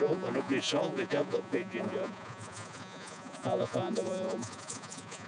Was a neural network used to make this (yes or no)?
yes